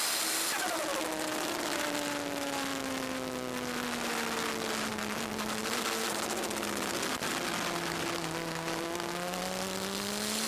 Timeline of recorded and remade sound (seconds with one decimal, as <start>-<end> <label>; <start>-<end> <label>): 0.0-10.5 recorded

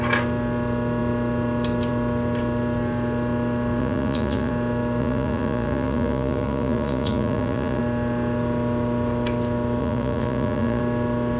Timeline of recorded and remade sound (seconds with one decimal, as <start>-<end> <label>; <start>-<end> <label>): 0.0-3.8 recorded; 3.8-4.5 remade; 4.5-5.0 recorded; 5.0-7.8 remade; 7.8-9.8 recorded; 9.8-10.8 remade; 10.8-11.4 recorded

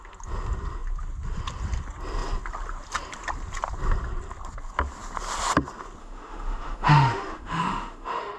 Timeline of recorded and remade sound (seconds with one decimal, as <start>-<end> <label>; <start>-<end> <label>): 0.0-6.0 recorded; 6.0-8.4 remade

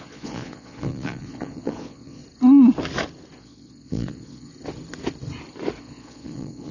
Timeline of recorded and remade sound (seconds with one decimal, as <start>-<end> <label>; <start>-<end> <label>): 0.0-2.2 remade; 2.2-3.4 recorded; 3.4-4.5 remade; 4.5-5.8 recorded; 5.8-6.7 remade

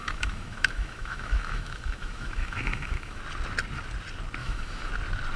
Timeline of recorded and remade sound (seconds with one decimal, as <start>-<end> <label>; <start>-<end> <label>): 0.0-3.2 remade; 3.2-4.4 recorded; 4.4-4.9 remade; 4.9-5.4 recorded